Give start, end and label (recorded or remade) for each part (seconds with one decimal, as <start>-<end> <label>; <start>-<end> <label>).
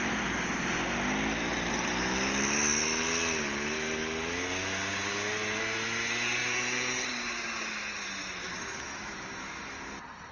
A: 0.0-8.4 recorded; 8.4-9.8 remade; 9.8-10.3 recorded